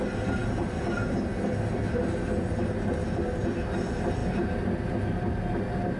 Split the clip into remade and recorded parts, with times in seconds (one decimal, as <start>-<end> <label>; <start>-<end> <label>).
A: 0.0-6.0 recorded